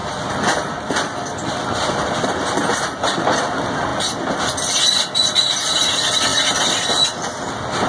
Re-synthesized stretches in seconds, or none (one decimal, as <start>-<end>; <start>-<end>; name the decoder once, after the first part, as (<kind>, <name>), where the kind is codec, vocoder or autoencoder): 0.0-1.9 (vocoder, BigVGAN v2); 6.3-6.9